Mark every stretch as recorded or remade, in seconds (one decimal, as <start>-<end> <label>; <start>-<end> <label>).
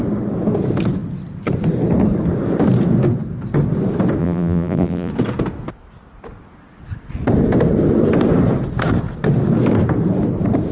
0.0-4.2 recorded; 4.2-5.1 remade; 5.1-10.7 recorded